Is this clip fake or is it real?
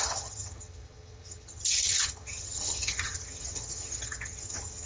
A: fake